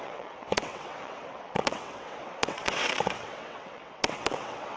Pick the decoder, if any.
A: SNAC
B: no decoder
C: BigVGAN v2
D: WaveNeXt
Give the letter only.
D